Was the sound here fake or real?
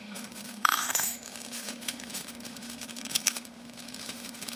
fake